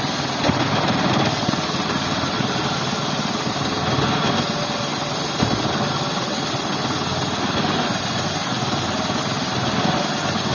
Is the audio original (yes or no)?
yes